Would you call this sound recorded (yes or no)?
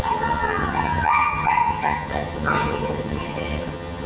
no